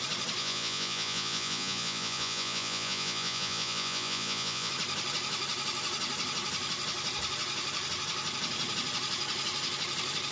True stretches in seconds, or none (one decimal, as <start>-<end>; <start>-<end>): 0.0-0.4; 4.7-10.3